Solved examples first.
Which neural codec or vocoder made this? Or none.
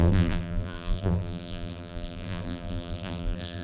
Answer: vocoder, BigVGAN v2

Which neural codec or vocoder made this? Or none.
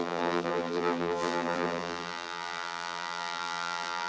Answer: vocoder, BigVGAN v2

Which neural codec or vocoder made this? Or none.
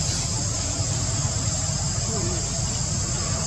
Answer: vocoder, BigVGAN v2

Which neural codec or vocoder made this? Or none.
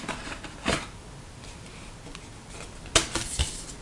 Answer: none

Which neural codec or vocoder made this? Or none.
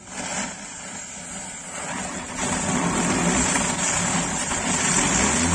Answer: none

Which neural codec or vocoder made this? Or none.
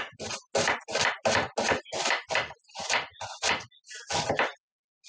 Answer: none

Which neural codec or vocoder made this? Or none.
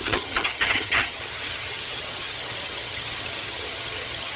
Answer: vocoder, HiFi-GAN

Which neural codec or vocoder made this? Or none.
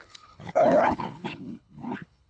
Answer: codec, HILCodec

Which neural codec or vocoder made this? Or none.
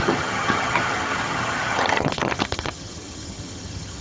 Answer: vocoder, HiFi-GAN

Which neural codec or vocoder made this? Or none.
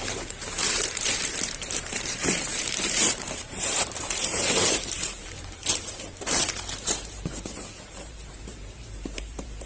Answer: vocoder, BigVGAN v2